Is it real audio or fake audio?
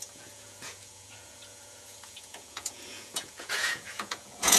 fake